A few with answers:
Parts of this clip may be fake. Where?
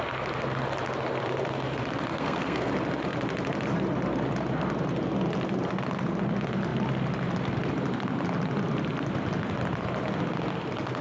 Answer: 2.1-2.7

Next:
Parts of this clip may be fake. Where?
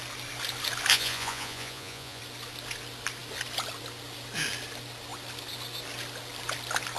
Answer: 0.9-2.2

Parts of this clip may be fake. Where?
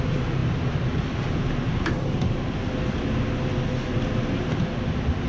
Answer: none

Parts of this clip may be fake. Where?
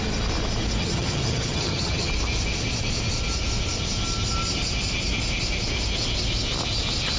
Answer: 0.8-2.1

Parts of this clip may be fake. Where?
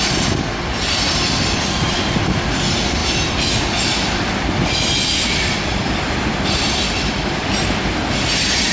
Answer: none